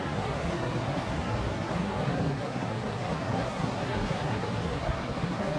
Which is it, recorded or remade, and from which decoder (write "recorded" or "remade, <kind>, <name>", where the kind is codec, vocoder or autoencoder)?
remade, codec, SNAC